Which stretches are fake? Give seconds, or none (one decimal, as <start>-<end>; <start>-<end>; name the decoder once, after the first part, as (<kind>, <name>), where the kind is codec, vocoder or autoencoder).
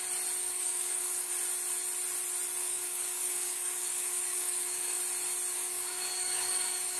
0.4-1.3 (codec, DAC); 2.6-5.0; 5.5-7.0